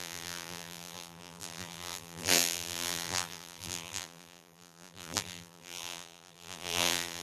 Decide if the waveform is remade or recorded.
remade